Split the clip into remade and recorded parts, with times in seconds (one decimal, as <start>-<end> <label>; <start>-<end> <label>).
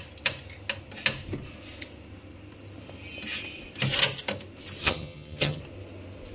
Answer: 0.0-4.8 recorded; 4.8-5.6 remade; 5.6-6.3 recorded